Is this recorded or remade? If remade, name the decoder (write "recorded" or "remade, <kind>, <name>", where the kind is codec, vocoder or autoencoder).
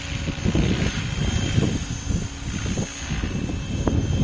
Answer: recorded